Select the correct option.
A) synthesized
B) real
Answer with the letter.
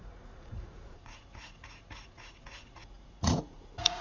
A